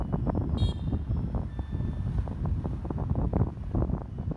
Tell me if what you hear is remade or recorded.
recorded